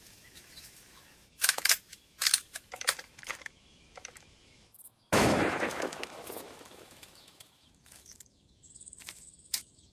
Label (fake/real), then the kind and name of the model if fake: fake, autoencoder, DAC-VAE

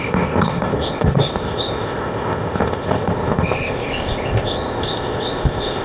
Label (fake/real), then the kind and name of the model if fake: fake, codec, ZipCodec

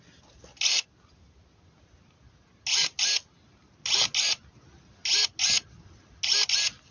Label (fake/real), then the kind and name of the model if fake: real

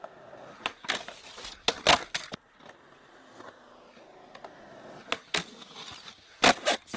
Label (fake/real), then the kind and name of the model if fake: real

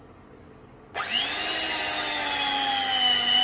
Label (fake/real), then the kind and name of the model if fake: real